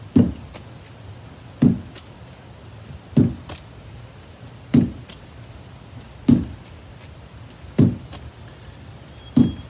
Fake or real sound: real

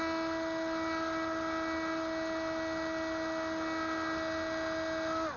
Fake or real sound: real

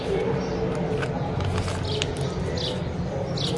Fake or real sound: real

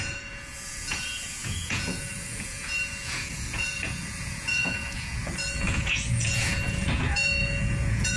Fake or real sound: fake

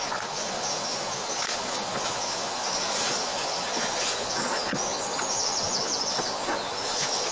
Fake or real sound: fake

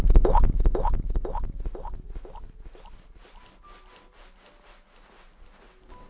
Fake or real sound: real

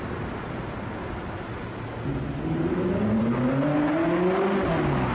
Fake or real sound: real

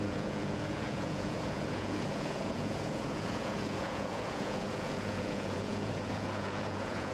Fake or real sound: fake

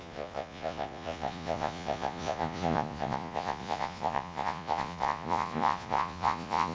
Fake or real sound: fake